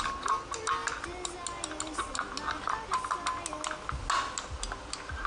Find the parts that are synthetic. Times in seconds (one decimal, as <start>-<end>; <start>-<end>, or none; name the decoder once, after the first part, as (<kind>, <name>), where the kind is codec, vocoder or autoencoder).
none